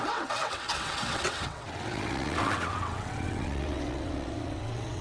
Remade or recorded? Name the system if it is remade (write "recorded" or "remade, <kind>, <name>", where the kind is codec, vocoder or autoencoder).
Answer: remade, vocoder, WaveNeXt